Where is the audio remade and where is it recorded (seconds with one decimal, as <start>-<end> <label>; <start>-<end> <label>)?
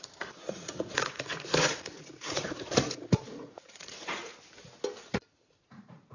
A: 0.0-4.3 remade; 4.3-5.0 recorded; 5.0-6.1 remade